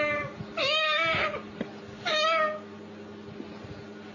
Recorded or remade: recorded